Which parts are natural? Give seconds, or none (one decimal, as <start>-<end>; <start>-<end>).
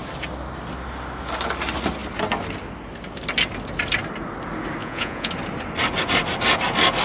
0.0-4.8; 5.3-7.0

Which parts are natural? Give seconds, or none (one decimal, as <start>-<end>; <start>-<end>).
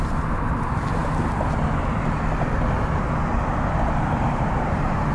1.0-4.1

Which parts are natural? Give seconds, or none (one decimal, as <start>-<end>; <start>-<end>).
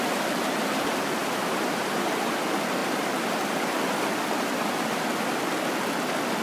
0.0-1.2; 2.3-6.4